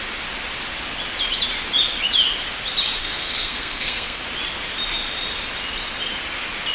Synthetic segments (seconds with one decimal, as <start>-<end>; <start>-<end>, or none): 3.0-4.2